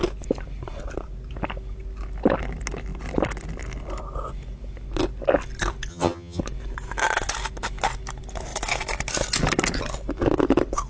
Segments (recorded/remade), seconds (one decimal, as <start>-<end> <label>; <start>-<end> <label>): 0.0-5.9 recorded; 5.9-6.4 remade; 6.4-10.9 recorded